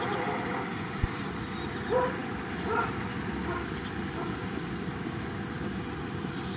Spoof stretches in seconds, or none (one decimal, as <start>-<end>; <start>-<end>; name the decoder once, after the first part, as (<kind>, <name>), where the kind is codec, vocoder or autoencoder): 2.2-3.8 (vocoder, BigVGAN v2); 4.4-5.8